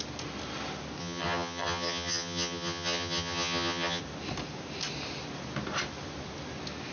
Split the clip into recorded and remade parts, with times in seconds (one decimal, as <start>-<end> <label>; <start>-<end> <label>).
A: 0.0-1.0 recorded; 1.0-4.0 remade; 4.0-6.9 recorded

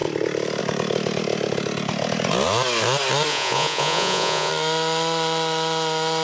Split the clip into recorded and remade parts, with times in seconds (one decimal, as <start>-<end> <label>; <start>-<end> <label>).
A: 0.0-3.3 recorded; 3.3-4.5 remade; 4.5-6.2 recorded

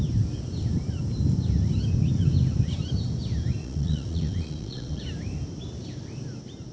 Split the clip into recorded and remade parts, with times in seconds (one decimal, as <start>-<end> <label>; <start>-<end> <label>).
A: 0.0-3.6 recorded; 3.6-5.0 remade; 5.0-6.7 recorded

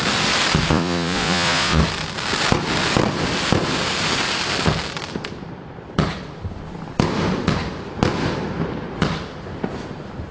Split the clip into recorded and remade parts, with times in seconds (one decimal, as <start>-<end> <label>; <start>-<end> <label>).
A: 0.0-0.7 recorded; 0.7-1.8 remade; 1.8-10.3 recorded

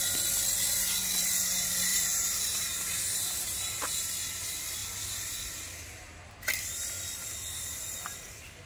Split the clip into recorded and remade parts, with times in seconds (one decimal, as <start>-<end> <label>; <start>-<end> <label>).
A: 0.0-1.9 recorded; 1.9-4.0 remade; 4.0-8.7 recorded

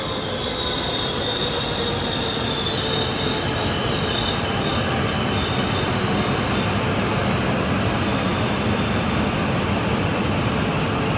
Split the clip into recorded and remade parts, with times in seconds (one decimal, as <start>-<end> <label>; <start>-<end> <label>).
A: 0.0-11.2 recorded

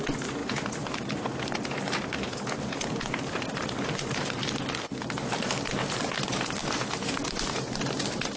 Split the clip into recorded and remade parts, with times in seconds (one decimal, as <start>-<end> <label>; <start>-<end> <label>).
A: 0.0-0.4 remade; 0.4-3.3 recorded; 3.3-4.4 remade; 4.4-5.9 recorded; 5.9-8.4 remade

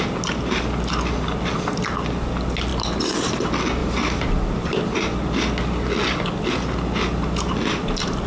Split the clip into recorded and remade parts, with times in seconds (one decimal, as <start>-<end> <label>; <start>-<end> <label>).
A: 0.0-3.8 recorded; 3.8-4.8 remade; 4.8-8.3 recorded